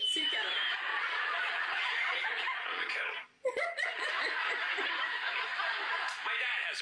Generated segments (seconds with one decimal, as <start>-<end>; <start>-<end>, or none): 0.9-4.1

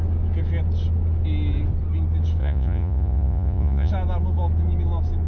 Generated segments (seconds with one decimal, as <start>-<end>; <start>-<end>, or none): 2.4-3.9

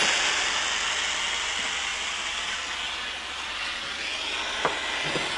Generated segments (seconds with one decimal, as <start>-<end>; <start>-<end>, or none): none

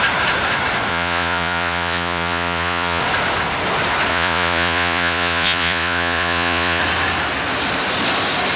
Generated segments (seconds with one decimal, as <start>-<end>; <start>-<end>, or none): 0.9-3.0; 4.1-6.8

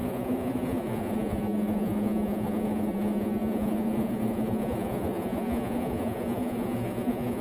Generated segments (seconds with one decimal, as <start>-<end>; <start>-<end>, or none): 0.0-7.4

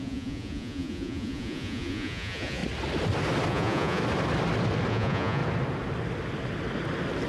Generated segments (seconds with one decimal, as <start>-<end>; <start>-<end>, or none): 0.0-2.6; 3.5-4.0; 4.9-5.4